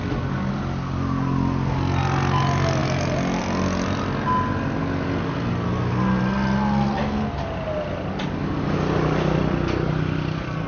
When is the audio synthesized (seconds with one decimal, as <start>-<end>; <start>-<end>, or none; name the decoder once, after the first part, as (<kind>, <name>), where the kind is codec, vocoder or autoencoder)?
none

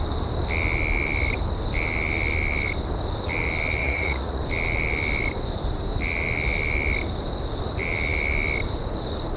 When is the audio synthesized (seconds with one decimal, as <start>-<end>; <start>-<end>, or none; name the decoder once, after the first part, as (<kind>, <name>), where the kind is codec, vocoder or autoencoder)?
3.8-4.4 (vocoder, Vocos)

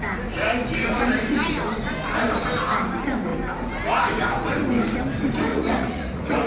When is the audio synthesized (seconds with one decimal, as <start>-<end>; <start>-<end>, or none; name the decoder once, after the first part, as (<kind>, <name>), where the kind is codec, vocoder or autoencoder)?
5.5-6.5 (vocoder, Vocos)